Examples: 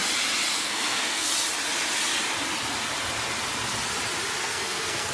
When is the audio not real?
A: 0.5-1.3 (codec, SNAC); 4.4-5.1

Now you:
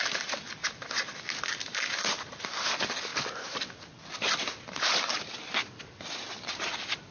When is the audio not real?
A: none

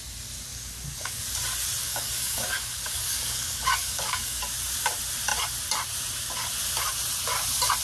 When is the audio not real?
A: 0.5-1.2 (codec, DAC); 1.8-4.4

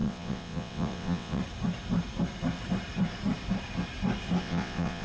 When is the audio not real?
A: 0.0-1.4 (vocoder, WaveNeXt); 4.4-5.0

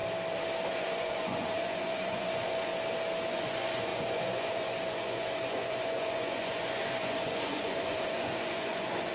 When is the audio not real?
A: 0.7-2.7 (vocoder, Vocos); 3.3-9.1

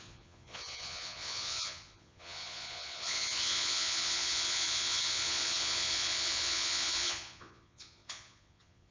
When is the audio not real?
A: 0.0-8.9 (vocoder, Vocos)

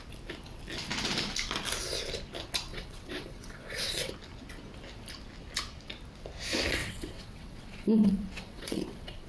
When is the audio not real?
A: 2.7-4.1 (vocoder, WaveNeXt); 6.8-9.3

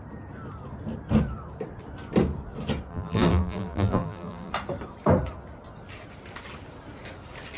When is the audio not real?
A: 2.9-4.5 (vocoder, BigVGAN v2)